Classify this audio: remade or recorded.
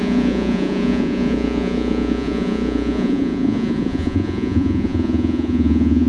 remade